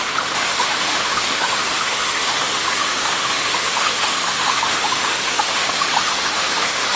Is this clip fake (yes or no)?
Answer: yes